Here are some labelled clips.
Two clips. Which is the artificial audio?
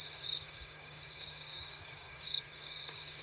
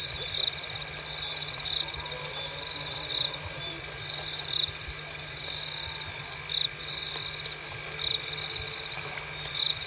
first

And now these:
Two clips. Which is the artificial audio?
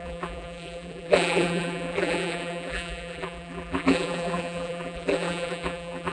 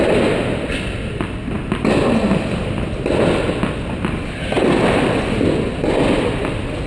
first